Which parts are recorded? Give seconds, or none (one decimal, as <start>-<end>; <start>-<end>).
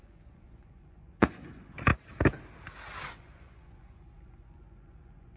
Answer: 1.9-3.1